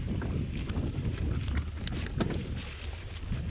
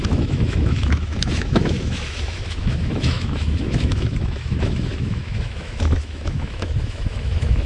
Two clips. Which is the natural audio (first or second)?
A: first